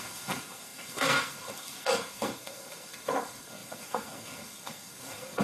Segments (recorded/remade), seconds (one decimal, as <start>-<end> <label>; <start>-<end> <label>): 0.0-5.4 remade